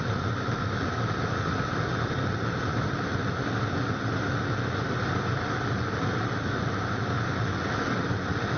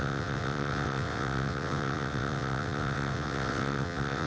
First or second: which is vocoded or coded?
second